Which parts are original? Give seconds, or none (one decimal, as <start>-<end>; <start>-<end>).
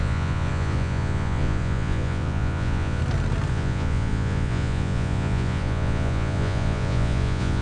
3.0-3.5